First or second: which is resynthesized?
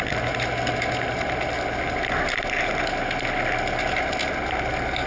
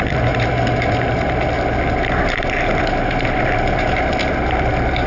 second